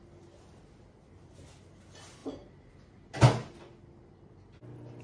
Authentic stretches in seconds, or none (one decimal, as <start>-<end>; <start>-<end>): 0.0-5.0